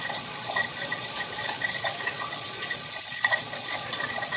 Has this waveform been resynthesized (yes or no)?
yes